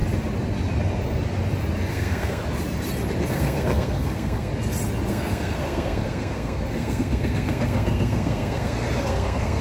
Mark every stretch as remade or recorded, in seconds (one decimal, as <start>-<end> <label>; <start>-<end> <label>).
0.0-1.9 recorded; 1.9-2.4 remade; 2.4-3.3 recorded; 3.3-4.5 remade; 4.5-5.1 recorded; 5.1-9.6 remade